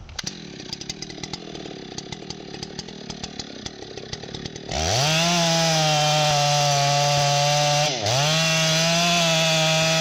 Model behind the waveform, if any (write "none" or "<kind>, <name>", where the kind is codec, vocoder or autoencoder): none